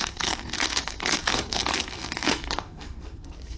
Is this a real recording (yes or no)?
no